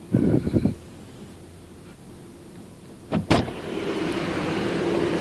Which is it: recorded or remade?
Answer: recorded